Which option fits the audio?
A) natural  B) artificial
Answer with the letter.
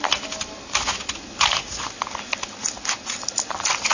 A